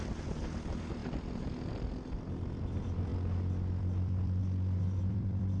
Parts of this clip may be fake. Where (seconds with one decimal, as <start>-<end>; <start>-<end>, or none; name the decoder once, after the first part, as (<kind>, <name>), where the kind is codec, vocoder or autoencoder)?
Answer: 0.0-3.1 (vocoder, BigVGAN v2); 3.8-4.4; 5.1-5.6